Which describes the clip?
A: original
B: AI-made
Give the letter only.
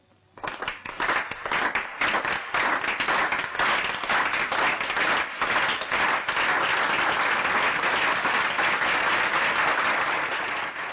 A